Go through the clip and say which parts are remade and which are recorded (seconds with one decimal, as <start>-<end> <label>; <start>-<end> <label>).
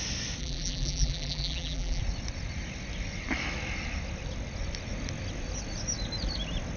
0.0-0.4 recorded; 0.4-2.0 remade; 2.0-6.8 recorded